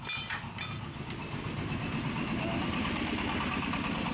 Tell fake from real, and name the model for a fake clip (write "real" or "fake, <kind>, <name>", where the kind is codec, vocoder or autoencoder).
real